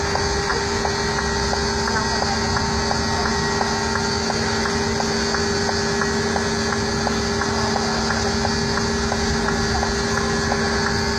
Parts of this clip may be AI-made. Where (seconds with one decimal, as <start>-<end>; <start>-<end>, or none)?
none